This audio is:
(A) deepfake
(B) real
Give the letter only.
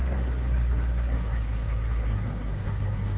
A